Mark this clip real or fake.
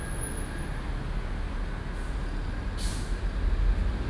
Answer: real